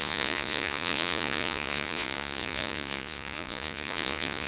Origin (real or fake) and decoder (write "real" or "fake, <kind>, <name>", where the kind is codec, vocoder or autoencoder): fake, vocoder, Vocos